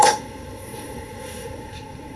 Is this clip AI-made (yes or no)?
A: yes